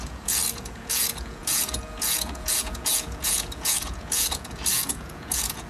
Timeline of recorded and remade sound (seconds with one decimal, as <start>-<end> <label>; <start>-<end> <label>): 0.0-5.7 remade